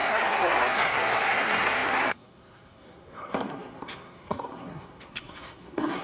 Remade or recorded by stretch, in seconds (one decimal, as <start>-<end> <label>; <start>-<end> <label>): 0.0-6.0 remade